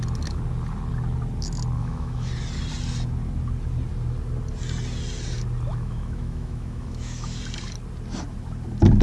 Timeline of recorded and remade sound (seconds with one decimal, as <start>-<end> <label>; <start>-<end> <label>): 0.0-1.8 recorded; 1.8-2.3 remade; 2.3-5.7 recorded; 5.7-7.4 remade; 7.4-9.0 recorded